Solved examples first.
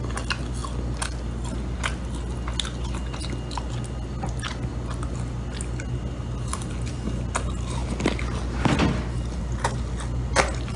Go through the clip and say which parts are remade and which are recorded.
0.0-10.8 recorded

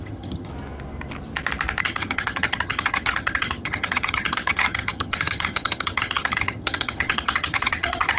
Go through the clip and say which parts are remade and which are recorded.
0.0-0.5 remade; 0.5-1.8 recorded; 1.8-8.2 remade

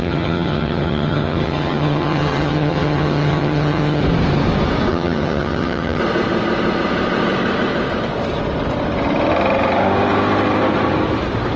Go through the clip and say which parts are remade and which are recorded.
0.0-4.0 remade; 4.0-4.9 recorded; 4.9-6.0 remade; 6.0-11.6 recorded

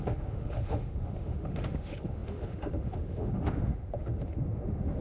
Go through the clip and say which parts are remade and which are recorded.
0.0-5.0 remade

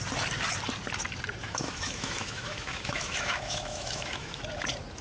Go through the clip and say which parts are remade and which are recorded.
0.0-1.4 recorded; 1.4-4.4 remade; 4.4-5.0 recorded

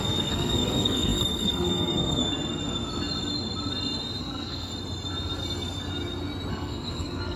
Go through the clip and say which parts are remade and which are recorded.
0.0-2.2 remade; 2.2-4.2 recorded; 4.2-4.7 remade; 4.7-6.5 recorded; 6.5-7.4 remade